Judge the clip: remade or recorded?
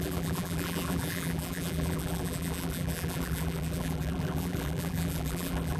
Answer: remade